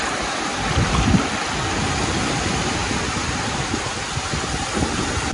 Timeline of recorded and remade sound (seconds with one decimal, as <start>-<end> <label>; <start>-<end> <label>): 0.0-5.3 recorded